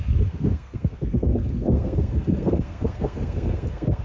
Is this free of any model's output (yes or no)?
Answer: no